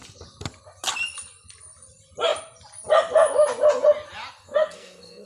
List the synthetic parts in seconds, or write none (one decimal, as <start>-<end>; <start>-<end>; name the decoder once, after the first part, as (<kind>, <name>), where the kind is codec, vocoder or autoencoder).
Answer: 4.4-5.3 (codec, SNAC)